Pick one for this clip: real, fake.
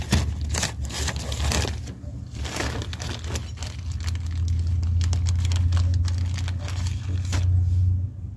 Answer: real